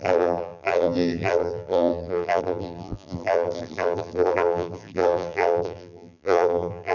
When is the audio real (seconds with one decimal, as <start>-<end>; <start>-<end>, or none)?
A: none